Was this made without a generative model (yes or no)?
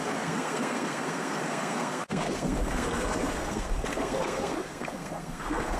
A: no